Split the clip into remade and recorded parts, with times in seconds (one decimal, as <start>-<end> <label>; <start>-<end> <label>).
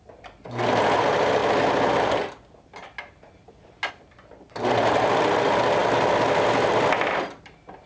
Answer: 0.0-7.9 recorded